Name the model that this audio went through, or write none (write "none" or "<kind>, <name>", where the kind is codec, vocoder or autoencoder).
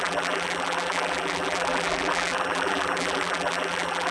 vocoder, BigVGAN v2